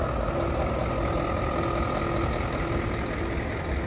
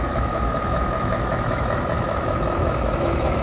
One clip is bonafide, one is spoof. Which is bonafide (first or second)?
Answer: first